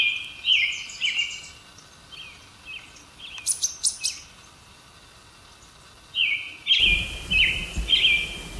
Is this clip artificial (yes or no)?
no